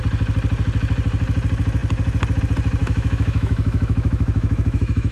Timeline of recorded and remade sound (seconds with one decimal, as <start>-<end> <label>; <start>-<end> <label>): 0.0-2.8 recorded; 2.8-5.1 remade